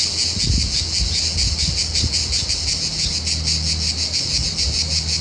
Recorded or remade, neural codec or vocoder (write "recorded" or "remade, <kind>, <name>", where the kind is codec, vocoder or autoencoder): recorded